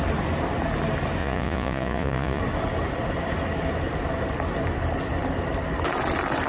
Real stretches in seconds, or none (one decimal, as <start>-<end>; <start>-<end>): 0.0-1.2; 2.4-6.5